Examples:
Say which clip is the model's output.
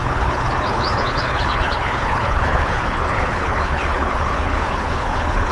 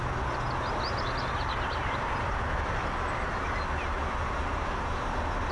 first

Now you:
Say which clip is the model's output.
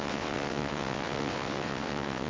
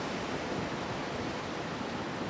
first